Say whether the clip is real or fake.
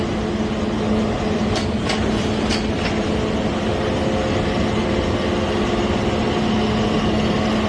real